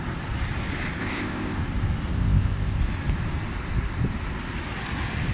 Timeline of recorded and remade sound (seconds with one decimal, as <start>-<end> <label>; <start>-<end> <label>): 0.0-1.0 recorded; 1.0-1.6 remade; 1.6-2.1 recorded; 2.1-2.8 remade; 2.8-5.3 recorded